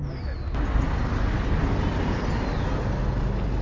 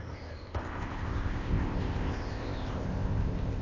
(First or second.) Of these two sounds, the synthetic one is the second